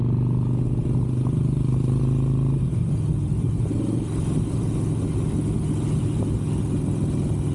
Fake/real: real